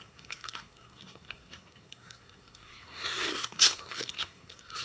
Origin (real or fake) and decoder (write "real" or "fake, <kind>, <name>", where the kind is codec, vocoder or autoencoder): fake, codec, SNAC